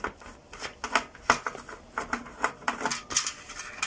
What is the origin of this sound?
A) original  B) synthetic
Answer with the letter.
A